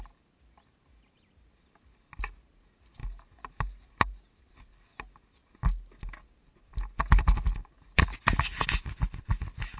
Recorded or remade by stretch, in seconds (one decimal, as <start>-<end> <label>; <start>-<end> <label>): 0.0-9.8 recorded